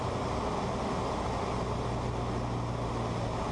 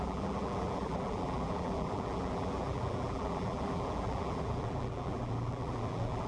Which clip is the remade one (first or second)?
second